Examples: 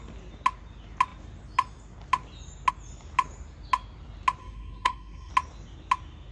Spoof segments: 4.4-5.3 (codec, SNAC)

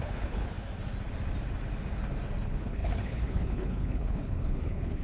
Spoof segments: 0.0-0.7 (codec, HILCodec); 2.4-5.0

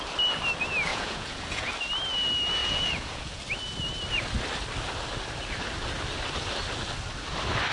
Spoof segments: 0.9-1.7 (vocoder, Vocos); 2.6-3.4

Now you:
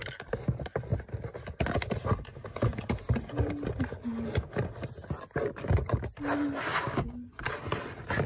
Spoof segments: 6.7-7.3 (codec, DAC)

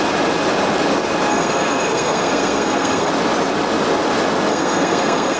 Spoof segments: 1.3-3.1 (codec, SNAC); 4.5-5.4

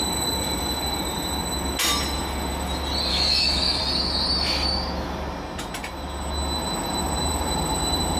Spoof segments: 3.1-3.8 (autoencoder, DAC-VAE)

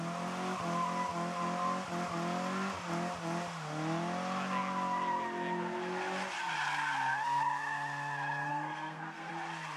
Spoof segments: 8.5-9.3 (codec, SNAC)

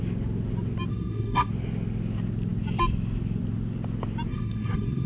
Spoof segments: 0.9-1.5 (codec, SNAC); 4.3-5.1